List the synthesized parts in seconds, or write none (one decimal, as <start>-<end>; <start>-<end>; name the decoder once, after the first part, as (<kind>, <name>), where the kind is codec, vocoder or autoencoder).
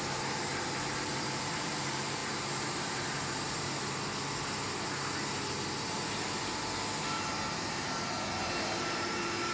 8.4-9.5 (vocoder, BigVGAN v2)